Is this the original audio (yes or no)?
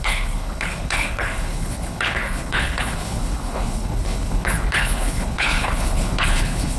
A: no